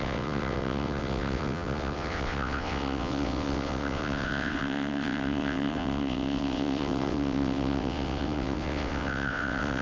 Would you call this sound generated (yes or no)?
yes